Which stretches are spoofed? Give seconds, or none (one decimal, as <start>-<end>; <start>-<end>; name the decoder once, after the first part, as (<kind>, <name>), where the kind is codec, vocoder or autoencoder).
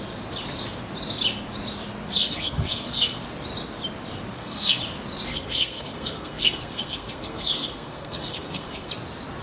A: 2.1-3.2 (codec, SNAC); 4.3-4.8; 5.3-8.9